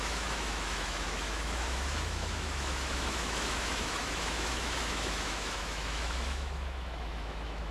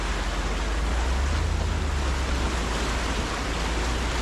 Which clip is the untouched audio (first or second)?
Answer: second